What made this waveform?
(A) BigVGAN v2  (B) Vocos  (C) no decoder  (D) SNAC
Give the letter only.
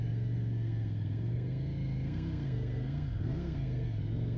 D